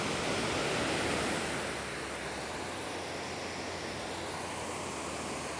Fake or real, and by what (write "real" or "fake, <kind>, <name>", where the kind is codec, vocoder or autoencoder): real